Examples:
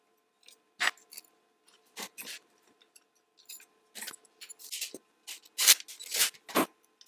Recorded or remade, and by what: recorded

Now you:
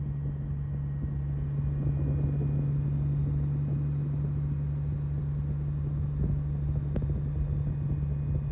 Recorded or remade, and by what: recorded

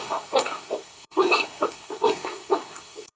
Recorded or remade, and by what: remade, codec, SNAC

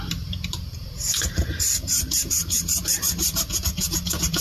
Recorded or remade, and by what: remade, vocoder, BigVGAN v2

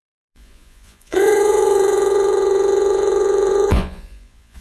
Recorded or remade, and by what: remade, vocoder, Vocos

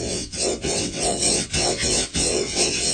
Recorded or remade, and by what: remade, vocoder, WaveNeXt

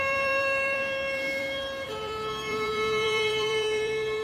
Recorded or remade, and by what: remade, vocoder, BigVGAN v2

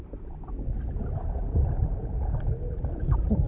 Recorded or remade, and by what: recorded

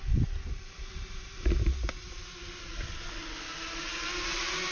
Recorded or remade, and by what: recorded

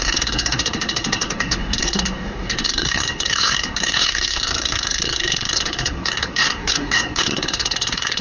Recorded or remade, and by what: remade, codec, SNAC